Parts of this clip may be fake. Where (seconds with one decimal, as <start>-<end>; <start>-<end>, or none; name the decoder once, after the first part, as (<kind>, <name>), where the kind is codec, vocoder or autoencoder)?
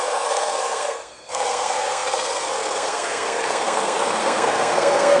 0.0-5.2 (codec, SNAC)